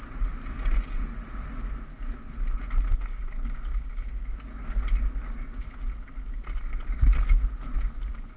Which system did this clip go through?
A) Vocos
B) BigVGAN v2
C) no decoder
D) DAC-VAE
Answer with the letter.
C